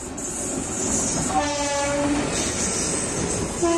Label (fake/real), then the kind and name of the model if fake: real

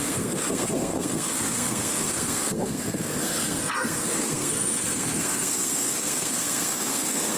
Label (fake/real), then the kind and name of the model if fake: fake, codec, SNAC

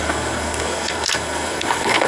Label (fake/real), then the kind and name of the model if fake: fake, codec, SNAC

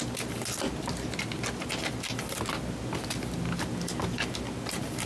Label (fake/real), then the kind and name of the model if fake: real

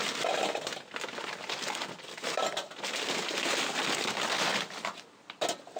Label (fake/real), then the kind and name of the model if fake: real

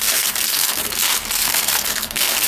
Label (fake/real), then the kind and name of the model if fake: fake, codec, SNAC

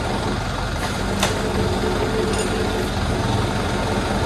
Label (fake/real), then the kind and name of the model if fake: real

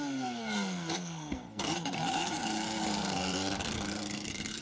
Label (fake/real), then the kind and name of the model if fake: fake, codec, SNAC